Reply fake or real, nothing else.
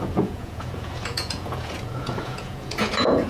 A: fake